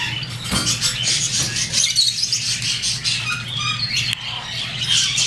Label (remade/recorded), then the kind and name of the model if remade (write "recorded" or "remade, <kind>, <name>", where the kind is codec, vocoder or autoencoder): recorded